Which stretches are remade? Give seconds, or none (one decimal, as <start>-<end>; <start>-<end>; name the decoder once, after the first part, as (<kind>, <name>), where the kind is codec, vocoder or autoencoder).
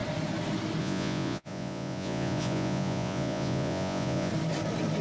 0.8-4.3 (vocoder, Vocos)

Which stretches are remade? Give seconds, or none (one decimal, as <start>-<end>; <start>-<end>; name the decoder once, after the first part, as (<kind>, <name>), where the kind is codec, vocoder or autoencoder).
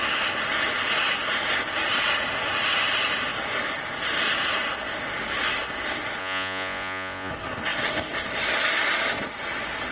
6.2-7.3 (vocoder, Vocos)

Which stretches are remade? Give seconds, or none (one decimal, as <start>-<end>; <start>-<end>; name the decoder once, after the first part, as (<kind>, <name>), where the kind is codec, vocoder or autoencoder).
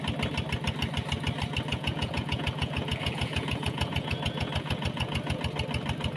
1.7-5.4 (vocoder, Vocos)